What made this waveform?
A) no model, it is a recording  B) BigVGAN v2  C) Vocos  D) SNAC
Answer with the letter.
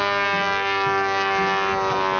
A